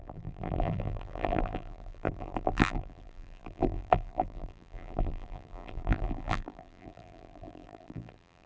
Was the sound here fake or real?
fake